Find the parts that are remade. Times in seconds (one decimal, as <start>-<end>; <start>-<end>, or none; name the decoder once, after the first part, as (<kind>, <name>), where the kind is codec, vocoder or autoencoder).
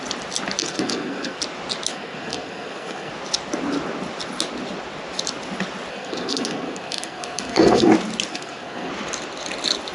0.6-1.4 (codec, SNAC); 1.9-3.1; 5.9-7.9; 8.3-8.9